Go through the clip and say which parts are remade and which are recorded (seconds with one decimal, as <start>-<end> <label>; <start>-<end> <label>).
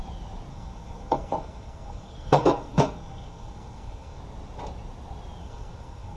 0.0-0.5 recorded; 0.5-4.2 remade; 4.2-5.4 recorded; 5.4-6.2 remade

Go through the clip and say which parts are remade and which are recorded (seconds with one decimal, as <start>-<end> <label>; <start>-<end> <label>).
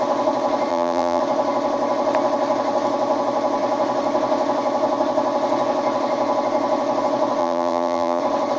0.0-0.7 recorded; 0.7-1.2 remade; 1.2-7.4 recorded; 7.4-8.2 remade; 8.2-8.6 recorded